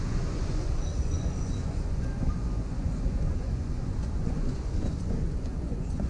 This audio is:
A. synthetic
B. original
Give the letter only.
A